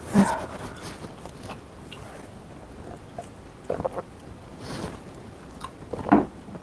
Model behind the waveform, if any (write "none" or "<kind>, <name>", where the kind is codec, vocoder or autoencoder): none